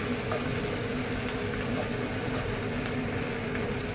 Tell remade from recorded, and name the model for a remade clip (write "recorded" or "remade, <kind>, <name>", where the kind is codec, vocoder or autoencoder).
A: recorded